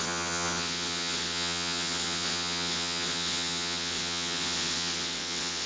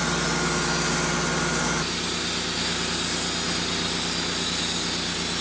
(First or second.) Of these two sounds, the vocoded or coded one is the first